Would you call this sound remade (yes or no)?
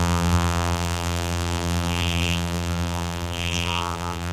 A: yes